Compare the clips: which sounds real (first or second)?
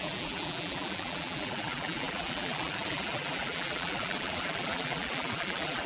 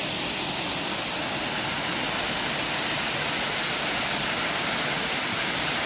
second